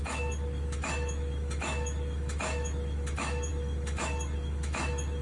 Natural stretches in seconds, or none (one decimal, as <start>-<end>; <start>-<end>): none